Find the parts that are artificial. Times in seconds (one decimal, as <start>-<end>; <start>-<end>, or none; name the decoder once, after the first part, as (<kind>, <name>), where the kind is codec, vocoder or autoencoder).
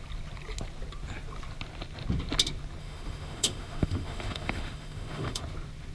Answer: 2.8-5.4 (autoencoder, DAC-VAE)